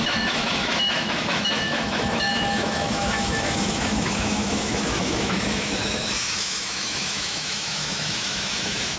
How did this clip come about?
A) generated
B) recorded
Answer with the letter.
A